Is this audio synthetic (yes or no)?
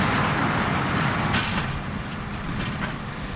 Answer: no